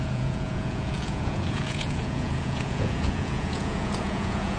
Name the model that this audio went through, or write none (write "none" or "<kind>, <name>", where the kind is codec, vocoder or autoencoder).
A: vocoder, Vocos